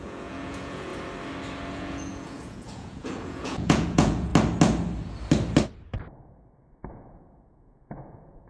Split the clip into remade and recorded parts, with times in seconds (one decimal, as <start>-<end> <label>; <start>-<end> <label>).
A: 0.0-0.9 remade; 0.9-1.7 recorded; 1.7-4.3 remade; 4.3-6.9 recorded; 6.9-8.5 remade